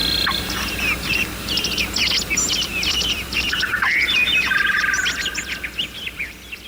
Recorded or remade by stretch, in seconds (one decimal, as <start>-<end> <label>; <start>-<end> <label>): 0.0-2.5 recorded; 2.5-6.7 remade